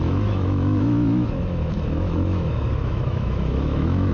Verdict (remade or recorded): remade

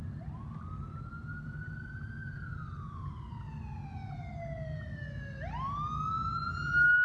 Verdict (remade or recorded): recorded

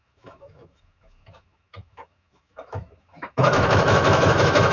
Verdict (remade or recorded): remade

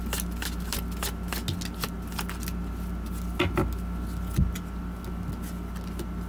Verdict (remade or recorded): recorded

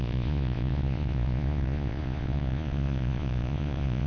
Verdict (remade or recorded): remade